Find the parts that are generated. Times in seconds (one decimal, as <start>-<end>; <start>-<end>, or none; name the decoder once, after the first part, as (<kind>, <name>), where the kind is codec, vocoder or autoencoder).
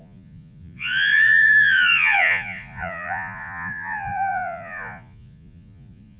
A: 0.0-6.2 (vocoder, Vocos)